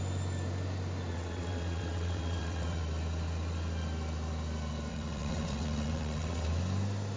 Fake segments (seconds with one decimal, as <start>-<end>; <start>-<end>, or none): 1.1-2.8; 4.9-6.5